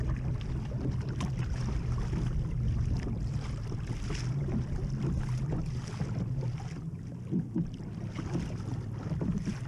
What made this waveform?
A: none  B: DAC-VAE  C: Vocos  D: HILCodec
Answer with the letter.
A